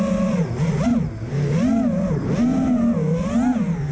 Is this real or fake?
real